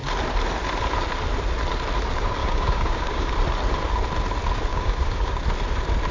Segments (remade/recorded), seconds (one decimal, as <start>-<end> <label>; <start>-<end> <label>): 0.0-2.4 recorded; 2.4-3.3 remade; 3.3-4.7 recorded; 4.7-5.4 remade; 5.4-6.1 recorded